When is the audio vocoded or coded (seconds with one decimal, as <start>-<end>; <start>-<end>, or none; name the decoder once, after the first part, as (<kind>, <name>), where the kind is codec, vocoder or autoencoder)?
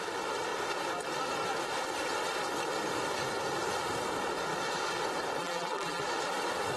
5.4-6.0 (vocoder, BigVGAN v2)